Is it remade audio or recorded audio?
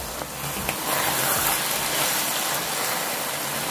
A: recorded